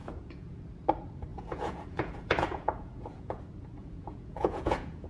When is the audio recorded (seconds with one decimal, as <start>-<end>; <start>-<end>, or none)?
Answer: 0.6-1.3; 3.4-3.8